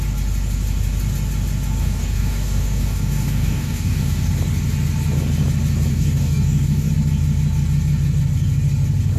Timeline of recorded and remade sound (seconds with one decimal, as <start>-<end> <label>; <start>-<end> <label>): 0.0-1.8 recorded; 1.8-4.3 remade; 4.3-5.9 recorded; 5.9-6.9 remade; 6.9-9.2 recorded